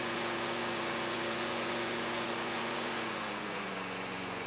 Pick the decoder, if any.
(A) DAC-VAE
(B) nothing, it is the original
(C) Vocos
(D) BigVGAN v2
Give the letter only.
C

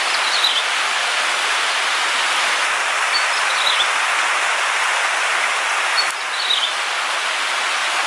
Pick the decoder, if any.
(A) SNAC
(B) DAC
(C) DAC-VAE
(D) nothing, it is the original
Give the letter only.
D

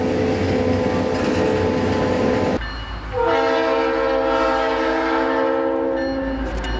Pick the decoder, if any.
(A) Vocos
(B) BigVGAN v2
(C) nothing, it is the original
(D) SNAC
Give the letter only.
C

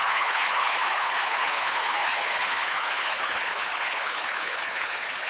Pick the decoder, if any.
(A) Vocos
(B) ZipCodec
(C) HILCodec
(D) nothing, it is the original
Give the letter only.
C